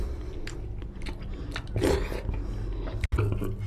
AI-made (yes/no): no